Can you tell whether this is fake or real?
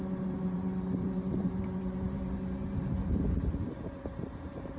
fake